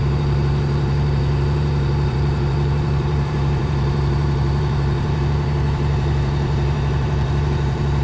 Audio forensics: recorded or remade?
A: remade